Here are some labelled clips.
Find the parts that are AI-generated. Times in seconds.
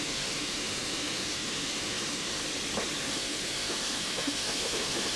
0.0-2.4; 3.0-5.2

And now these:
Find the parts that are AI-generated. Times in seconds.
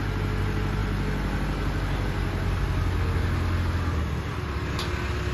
none